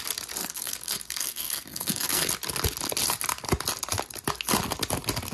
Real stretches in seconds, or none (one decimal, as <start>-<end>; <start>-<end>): 0.0-0.4; 2.3-5.3

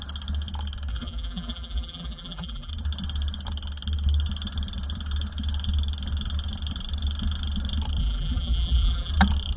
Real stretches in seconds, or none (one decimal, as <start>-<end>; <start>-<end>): 0.0-0.9; 2.7-8.0; 9.1-9.6